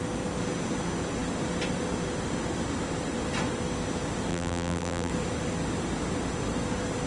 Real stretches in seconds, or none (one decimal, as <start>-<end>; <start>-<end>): 0.0-4.3; 5.1-7.1